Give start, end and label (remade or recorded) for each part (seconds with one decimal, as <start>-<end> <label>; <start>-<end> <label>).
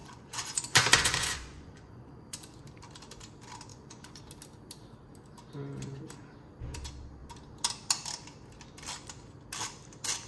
0.0-2.6 remade; 2.6-3.7 recorded; 3.7-4.2 remade; 4.2-10.3 recorded